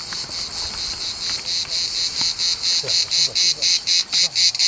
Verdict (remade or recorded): recorded